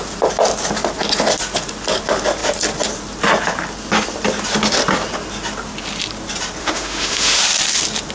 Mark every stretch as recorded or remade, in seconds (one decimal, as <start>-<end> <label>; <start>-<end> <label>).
0.0-6.6 recorded; 6.6-7.4 remade; 7.4-8.1 recorded